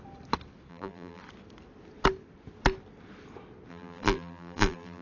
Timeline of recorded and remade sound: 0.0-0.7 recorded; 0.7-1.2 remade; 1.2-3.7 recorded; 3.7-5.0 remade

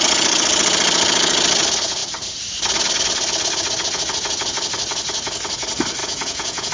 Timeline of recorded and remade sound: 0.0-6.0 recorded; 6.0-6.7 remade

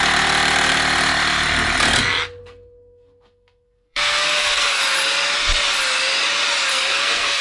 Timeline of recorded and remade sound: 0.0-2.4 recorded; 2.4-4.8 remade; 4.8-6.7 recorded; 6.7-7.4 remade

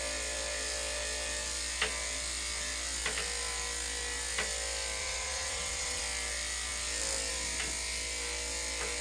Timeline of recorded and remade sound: 0.0-5.0 recorded; 5.0-6.0 remade; 6.0-9.0 recorded